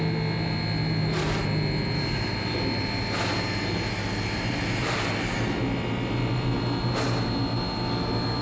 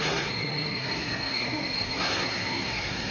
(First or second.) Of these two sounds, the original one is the first